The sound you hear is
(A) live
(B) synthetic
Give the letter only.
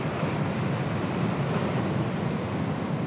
A